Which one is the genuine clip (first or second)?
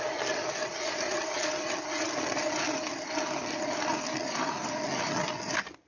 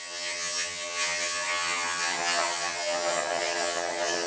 first